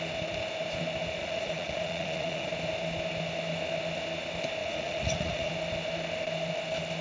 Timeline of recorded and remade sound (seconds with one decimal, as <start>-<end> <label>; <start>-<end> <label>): 0.0-1.2 recorded; 1.2-2.5 remade; 2.5-4.6 recorded; 4.6-5.5 remade; 5.5-7.0 recorded